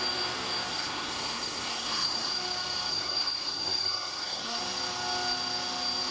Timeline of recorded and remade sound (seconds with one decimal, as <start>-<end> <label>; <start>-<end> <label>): 0.0-0.7 recorded; 0.7-2.3 remade; 2.3-2.9 recorded; 2.9-4.6 remade; 4.6-6.1 recorded